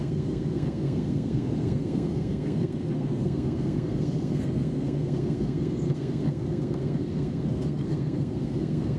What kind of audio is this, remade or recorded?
remade